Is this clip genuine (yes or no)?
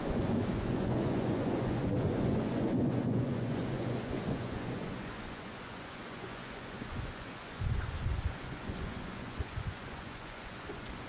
no